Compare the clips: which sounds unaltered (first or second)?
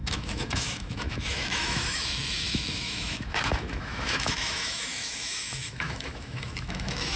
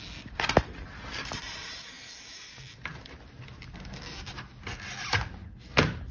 second